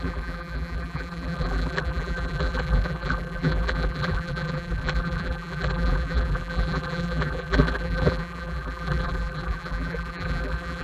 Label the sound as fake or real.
fake